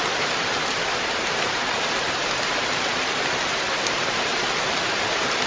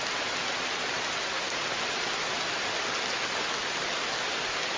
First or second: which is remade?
first